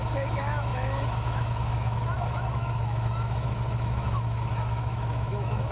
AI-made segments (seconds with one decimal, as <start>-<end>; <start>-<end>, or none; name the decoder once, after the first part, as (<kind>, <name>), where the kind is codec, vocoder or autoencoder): 0.0-5.7 (autoencoder, DAC-VAE)